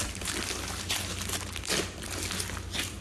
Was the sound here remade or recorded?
recorded